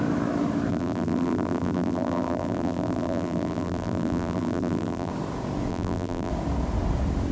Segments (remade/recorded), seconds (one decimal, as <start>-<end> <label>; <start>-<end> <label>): 0.0-0.7 recorded; 0.7-5.1 remade; 5.1-5.7 recorded; 5.7-6.3 remade; 6.3-7.3 recorded